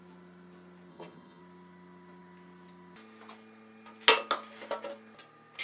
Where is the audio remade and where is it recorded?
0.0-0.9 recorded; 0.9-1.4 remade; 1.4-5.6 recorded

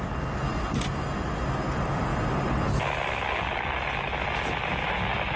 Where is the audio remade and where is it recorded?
0.0-5.4 recorded

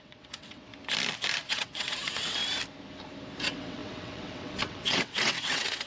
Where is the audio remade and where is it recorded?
0.0-0.7 remade; 0.7-1.5 recorded; 1.5-2.4 remade; 2.4-3.4 recorded; 3.4-5.9 remade

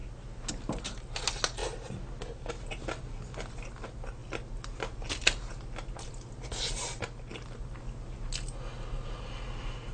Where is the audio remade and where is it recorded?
0.0-9.9 recorded